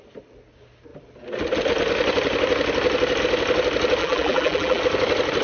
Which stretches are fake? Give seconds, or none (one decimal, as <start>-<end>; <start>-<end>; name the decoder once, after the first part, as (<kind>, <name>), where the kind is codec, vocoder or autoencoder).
4.0-4.8 (vocoder, BigVGAN v2)